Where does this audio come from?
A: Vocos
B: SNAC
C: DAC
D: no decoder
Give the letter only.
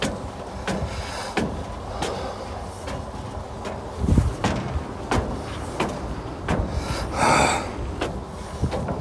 D